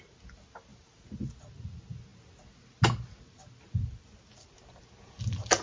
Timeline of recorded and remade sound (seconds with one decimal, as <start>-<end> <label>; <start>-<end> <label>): 0.0-5.6 recorded